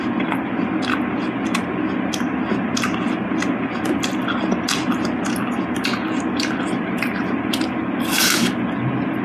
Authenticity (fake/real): real